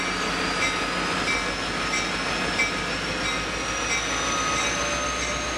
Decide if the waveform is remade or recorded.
recorded